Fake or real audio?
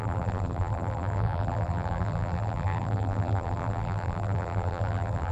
fake